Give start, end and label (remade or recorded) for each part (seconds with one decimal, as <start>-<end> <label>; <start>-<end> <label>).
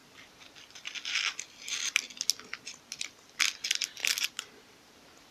0.0-2.1 remade; 2.1-4.0 recorded; 4.0-5.3 remade